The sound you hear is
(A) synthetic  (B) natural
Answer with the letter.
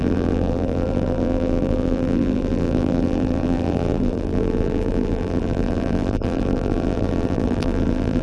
A